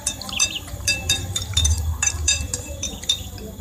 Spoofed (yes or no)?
yes